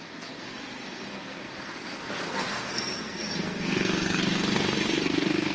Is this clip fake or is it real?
fake